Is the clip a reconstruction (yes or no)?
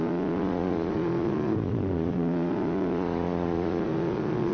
yes